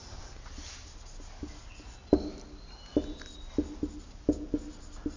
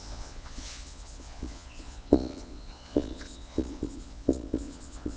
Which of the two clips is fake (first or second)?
second